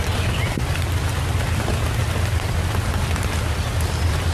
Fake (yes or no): no